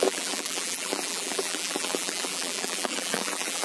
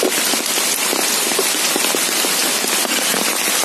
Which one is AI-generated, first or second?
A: first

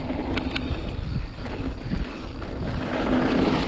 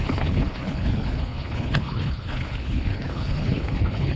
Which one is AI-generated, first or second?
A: second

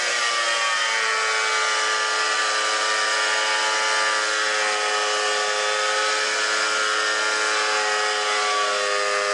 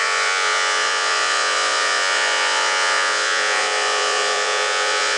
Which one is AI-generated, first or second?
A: second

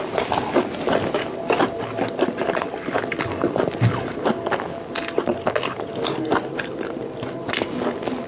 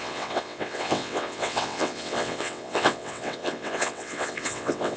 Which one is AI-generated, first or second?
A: second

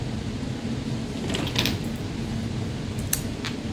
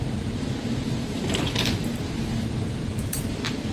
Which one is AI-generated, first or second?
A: second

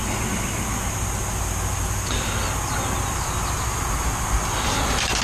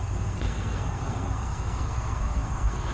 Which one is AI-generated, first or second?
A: second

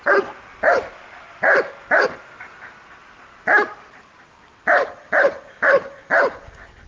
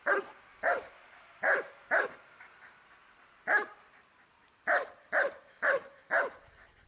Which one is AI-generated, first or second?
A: second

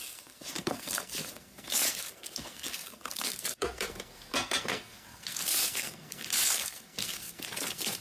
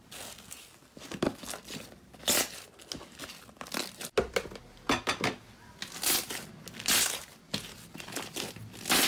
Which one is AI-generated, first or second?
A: first